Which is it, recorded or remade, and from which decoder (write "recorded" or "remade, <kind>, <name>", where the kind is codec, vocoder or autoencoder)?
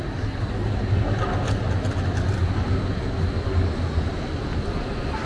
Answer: recorded